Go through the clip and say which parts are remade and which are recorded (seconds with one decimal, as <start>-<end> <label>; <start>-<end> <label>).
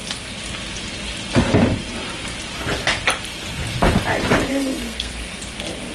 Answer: 0.0-4.5 recorded; 4.5-5.4 remade; 5.4-5.9 recorded